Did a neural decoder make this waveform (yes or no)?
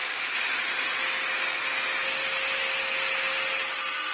no